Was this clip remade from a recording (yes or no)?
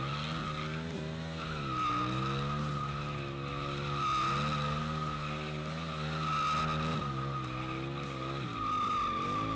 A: no